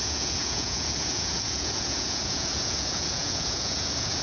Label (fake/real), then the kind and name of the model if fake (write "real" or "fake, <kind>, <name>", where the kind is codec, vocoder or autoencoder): fake, vocoder, Vocos